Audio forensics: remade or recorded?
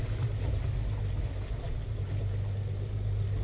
recorded